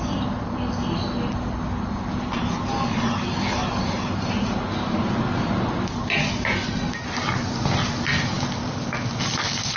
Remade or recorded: recorded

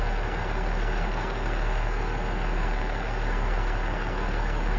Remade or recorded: remade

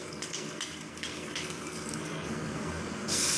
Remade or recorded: remade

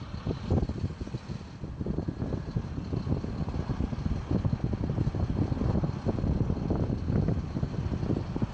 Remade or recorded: recorded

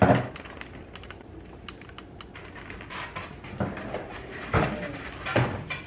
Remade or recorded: recorded